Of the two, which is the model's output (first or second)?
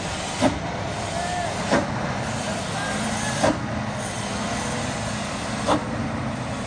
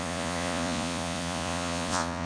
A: second